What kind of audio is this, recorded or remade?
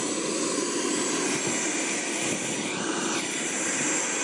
recorded